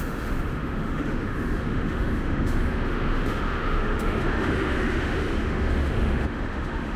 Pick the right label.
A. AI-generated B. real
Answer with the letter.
A